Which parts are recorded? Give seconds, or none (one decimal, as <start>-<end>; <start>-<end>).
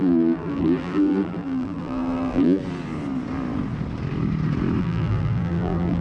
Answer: 2.6-4.8